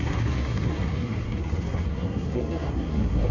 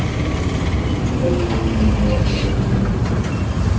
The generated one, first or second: first